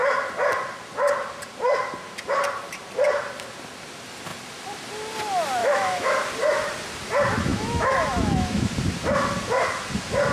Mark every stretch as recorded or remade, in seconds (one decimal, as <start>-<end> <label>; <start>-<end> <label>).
0.0-5.6 recorded; 5.6-6.1 remade; 6.1-7.5 recorded; 7.5-8.7 remade; 8.7-10.3 recorded